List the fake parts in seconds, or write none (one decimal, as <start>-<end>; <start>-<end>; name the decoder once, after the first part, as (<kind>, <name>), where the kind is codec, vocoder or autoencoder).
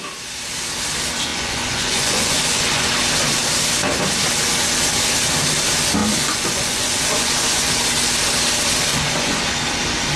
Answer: 1.3-2.9 (vocoder, Vocos); 6.0-7.7; 8.9-9.4